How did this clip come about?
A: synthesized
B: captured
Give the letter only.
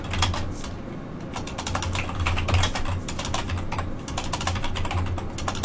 B